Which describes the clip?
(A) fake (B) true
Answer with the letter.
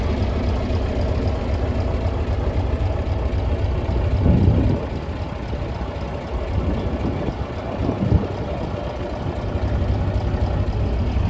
B